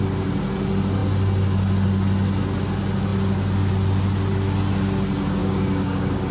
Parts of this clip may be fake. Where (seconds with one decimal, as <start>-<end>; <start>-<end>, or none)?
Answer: 5.4-6.3